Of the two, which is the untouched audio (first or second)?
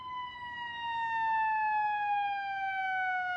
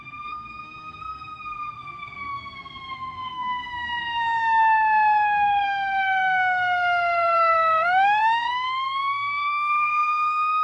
first